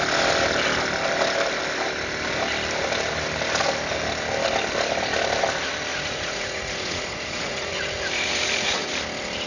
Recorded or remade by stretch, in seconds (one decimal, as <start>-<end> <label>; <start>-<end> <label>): 0.0-5.9 recorded; 5.9-8.9 remade; 8.9-9.5 recorded